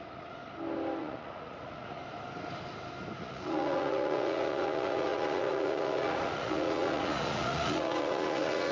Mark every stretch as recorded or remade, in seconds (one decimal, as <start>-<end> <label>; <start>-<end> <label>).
0.0-0.4 remade; 0.4-1.0 recorded; 1.0-2.0 remade; 2.0-3.2 recorded; 3.2-8.7 remade